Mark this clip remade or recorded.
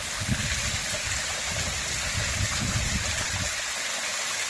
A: recorded